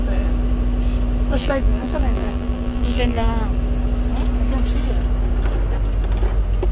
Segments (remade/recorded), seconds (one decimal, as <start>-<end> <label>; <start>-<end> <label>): 0.0-1.4 recorded; 1.4-3.3 remade; 3.3-6.7 recorded